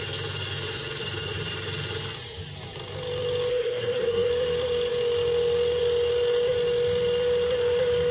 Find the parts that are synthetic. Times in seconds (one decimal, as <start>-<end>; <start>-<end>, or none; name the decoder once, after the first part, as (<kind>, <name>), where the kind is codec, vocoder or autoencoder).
3.5-4.3 (codec, SNAC)